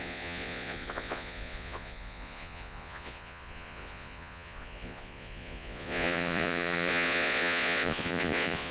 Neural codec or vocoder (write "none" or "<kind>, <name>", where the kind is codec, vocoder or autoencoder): vocoder, Vocos